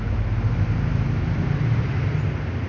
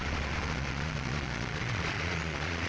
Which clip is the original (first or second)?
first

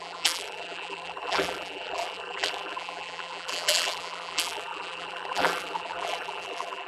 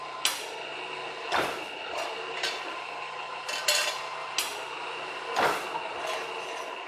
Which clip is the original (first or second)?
second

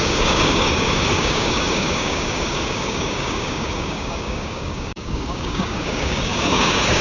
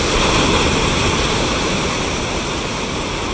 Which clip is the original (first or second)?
second